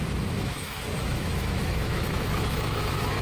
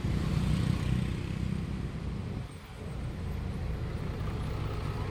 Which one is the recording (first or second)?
second